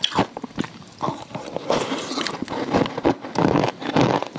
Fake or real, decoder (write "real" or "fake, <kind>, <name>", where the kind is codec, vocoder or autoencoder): real